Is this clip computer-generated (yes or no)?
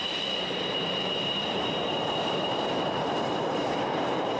yes